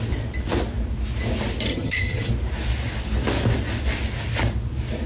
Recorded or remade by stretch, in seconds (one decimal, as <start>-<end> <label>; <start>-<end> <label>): 0.0-1.7 recorded; 1.7-2.3 remade; 2.3-5.1 recorded